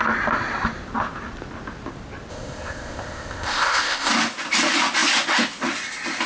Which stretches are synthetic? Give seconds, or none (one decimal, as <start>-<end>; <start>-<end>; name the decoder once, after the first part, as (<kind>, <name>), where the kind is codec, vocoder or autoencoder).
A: 2.3-4.1 (codec, ZipCodec)

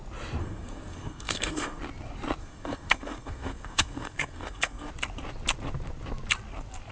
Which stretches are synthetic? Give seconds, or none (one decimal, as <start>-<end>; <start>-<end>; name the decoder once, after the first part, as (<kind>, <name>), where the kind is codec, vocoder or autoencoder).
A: 0.4-1.8 (codec, SNAC); 2.4-4.9

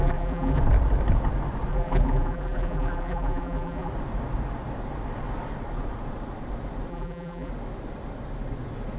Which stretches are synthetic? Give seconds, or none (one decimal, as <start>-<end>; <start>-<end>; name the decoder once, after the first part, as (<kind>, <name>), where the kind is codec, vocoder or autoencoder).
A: 0.0-0.6 (vocoder, BigVGAN v2); 1.7-3.9; 6.9-7.5

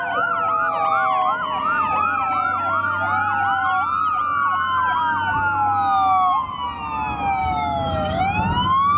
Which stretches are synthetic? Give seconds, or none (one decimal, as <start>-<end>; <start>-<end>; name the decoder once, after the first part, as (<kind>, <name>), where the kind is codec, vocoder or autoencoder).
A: 7.4-8.2 (codec, DAC)